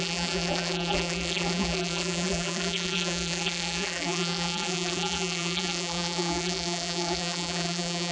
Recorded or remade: remade